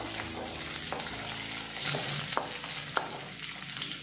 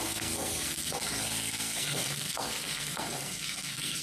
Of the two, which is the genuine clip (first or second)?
first